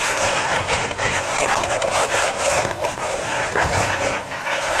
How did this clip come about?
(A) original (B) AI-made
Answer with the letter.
B